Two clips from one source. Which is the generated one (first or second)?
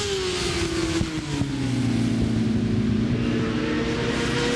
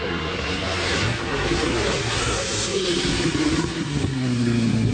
second